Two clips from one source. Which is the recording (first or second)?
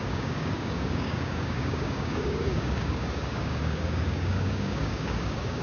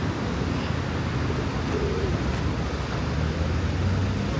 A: second